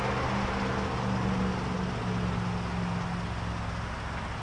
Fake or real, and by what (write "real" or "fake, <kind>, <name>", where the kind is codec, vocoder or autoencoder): real